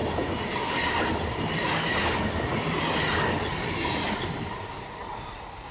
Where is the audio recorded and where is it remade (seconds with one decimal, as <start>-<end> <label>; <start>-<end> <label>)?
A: 0.0-5.7 recorded